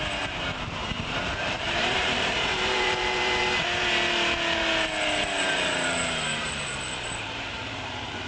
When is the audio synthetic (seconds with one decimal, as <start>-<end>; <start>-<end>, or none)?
0.0-3.4; 5.4-8.3